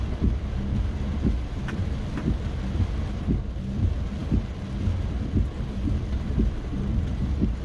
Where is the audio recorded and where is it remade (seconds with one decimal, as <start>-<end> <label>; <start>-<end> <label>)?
0.0-7.6 recorded